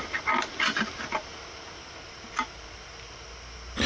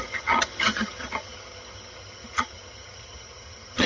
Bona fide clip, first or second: first